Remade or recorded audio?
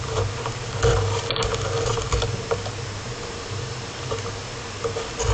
recorded